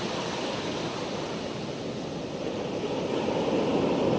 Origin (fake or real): real